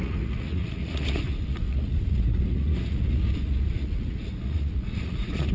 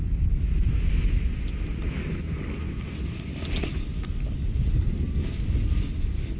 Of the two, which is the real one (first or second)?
second